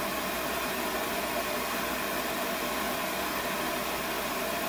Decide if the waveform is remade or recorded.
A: recorded